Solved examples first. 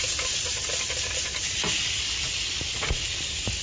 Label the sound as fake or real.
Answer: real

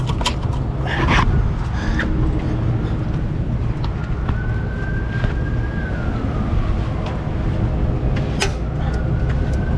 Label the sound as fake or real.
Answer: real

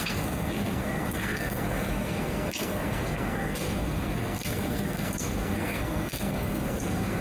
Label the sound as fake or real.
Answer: fake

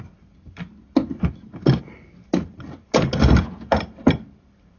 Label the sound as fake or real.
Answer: real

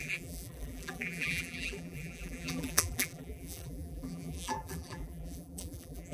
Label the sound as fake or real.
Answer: fake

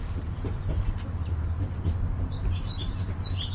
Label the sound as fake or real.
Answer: real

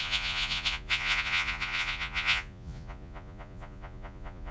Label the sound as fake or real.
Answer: fake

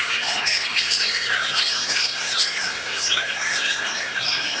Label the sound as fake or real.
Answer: fake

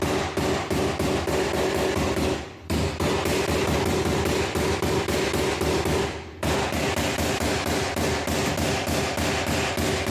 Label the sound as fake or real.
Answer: real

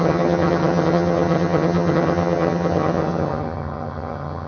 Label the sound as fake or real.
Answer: fake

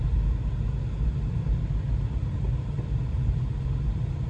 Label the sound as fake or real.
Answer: real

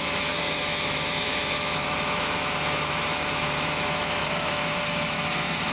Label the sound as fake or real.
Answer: fake